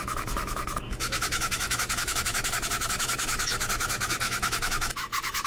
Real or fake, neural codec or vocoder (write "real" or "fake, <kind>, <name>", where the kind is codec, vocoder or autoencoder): fake, autoencoder, DAC-VAE